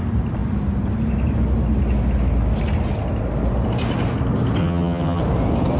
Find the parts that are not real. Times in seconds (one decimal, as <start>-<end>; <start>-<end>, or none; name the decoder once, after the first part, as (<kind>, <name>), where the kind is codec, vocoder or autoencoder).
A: 4.6-5.2 (vocoder, HiFi-GAN)